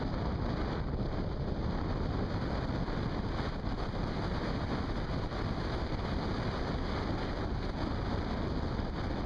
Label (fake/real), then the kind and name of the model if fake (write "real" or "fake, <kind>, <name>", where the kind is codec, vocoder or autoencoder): real